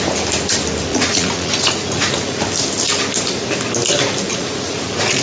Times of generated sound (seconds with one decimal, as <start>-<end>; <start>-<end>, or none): 0.9-2.4; 4.3-5.2